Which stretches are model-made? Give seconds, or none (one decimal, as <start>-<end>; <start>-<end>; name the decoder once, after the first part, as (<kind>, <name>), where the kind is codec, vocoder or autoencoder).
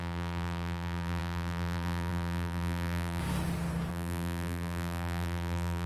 0.0-3.2 (vocoder, BigVGAN v2); 3.9-5.9